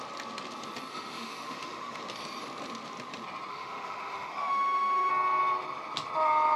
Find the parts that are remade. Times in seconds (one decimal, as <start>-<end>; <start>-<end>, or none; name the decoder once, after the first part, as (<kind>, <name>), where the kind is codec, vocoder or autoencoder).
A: 0.9-2.0 (autoencoder, DAC-VAE); 3.5-5.1